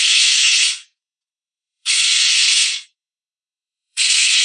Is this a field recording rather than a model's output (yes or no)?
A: no